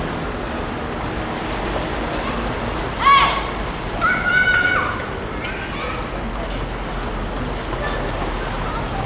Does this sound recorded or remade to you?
recorded